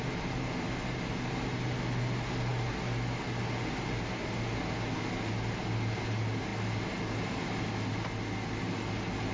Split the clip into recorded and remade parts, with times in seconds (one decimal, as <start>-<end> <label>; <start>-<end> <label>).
0.0-9.3 recorded